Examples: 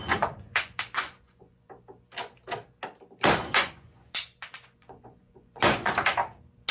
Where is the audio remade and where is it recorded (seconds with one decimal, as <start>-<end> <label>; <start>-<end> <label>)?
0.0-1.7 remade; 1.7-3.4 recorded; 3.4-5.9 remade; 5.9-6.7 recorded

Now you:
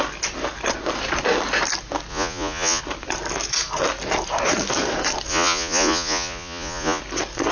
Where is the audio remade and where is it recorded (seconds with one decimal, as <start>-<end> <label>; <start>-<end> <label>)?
0.0-2.1 recorded; 2.1-2.8 remade; 2.8-5.3 recorded; 5.3-7.0 remade; 7.0-7.5 recorded

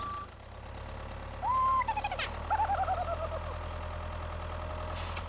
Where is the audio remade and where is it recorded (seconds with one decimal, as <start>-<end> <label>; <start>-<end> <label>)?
0.0-5.3 recorded

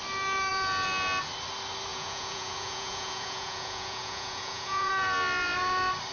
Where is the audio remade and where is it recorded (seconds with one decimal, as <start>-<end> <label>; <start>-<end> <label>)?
0.0-1.9 recorded; 1.9-4.9 remade; 4.9-6.1 recorded

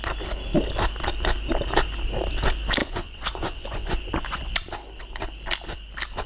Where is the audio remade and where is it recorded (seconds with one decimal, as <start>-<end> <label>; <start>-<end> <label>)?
0.0-2.8 recorded; 2.8-4.5 remade; 4.5-6.3 recorded